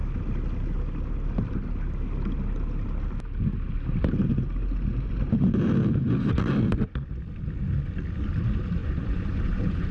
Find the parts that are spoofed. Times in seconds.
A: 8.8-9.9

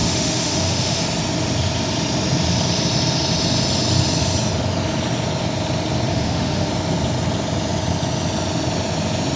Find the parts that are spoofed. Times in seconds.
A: 0.0-1.0; 6.1-6.7

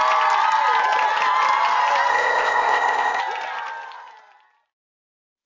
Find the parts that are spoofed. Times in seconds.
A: 2.1-3.2

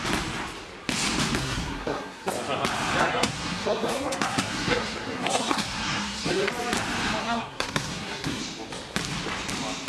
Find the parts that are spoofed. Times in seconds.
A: 1.4-2.3; 3.0-6.5; 7.2-8.4

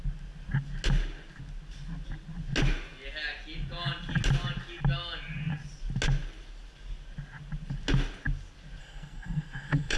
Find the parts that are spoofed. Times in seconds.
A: 8.8-10.0

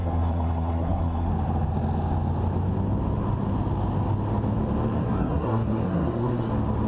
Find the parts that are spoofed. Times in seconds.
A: 0.0-1.3; 5.0-6.5

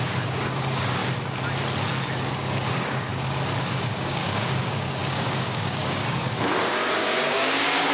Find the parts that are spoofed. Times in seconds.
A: 0.0-1.0; 2.3-3.1; 3.7-7.9

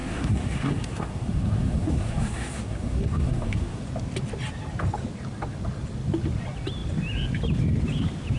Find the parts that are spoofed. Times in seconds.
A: 0.0-3.8